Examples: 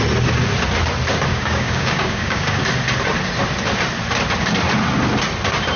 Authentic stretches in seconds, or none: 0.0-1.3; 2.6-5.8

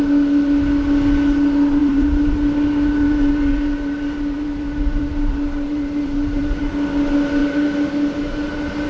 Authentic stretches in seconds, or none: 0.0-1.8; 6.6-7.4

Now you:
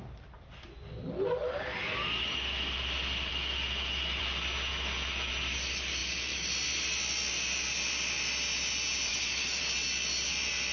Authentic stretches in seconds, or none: 0.0-3.3; 4.2-4.7; 5.3-9.1; 9.6-10.7

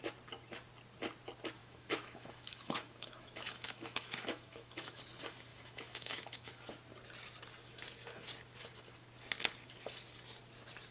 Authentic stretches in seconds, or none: 0.0-1.6; 5.0-5.5; 6.7-10.9

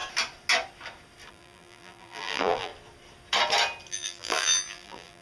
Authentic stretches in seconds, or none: 0.0-1.3; 2.7-3.9

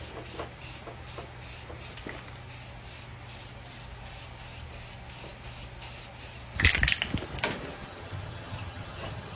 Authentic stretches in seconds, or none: 0.0-7.8

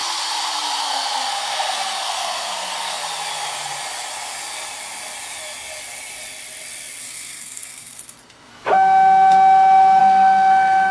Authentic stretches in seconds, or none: 0.0-0.8; 3.0-7.0; 8.5-10.0